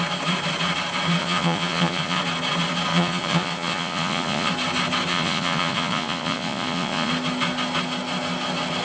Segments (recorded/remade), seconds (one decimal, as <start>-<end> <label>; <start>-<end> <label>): 0.0-1.2 recorded; 1.2-2.2 remade; 2.2-2.9 recorded; 2.9-4.5 remade; 4.5-5.1 recorded; 5.1-7.1 remade; 7.1-8.8 recorded